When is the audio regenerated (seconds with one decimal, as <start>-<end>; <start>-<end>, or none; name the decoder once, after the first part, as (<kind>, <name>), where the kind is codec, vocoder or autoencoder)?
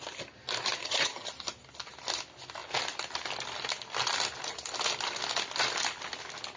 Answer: 0.8-1.3 (vocoder, HiFi-GAN)